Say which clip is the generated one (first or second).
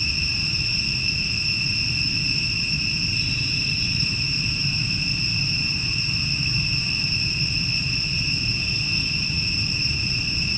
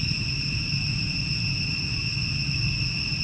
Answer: first